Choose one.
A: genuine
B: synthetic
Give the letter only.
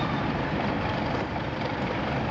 B